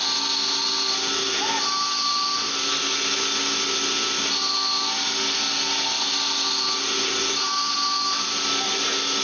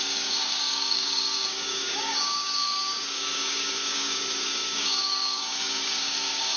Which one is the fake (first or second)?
second